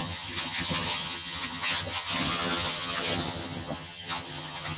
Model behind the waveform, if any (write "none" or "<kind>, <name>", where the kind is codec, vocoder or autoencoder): vocoder, HiFi-GAN